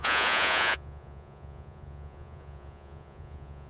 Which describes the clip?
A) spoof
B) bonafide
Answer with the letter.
A